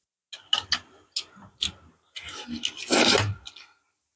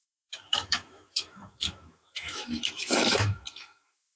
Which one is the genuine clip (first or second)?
first